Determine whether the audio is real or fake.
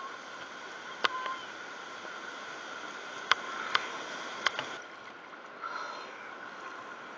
real